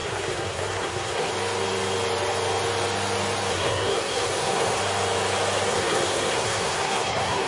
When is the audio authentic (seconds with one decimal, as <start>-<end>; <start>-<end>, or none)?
1.3-3.5; 4.8-5.7